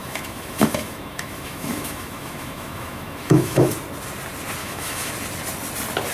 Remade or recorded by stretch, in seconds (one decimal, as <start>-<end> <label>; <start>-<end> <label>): 0.0-3.7 remade; 3.7-4.6 recorded; 4.6-5.1 remade; 5.1-6.1 recorded